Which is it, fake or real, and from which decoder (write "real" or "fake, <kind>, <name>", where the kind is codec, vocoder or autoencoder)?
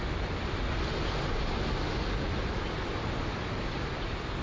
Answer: real